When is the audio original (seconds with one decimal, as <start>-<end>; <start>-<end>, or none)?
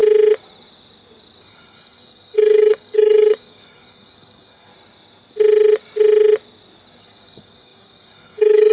0.0-1.4; 4.7-7.0